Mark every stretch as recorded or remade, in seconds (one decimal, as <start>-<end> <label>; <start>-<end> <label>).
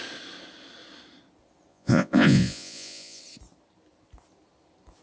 0.0-1.7 recorded; 1.7-3.2 remade; 3.2-5.0 recorded